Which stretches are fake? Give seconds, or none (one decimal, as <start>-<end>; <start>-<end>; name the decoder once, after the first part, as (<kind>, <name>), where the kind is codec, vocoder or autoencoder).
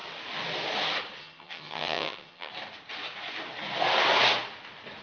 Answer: 1.2-2.5 (vocoder, HiFi-GAN)